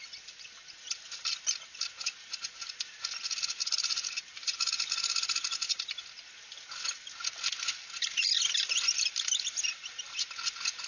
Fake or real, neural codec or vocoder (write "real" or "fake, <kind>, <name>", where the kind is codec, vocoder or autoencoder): real